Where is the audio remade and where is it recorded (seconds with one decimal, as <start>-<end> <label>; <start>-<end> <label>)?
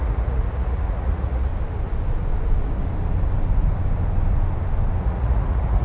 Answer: 0.0-1.5 remade; 1.5-5.0 recorded; 5.0-5.8 remade